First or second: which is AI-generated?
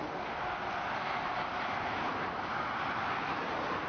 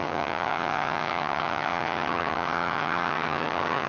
second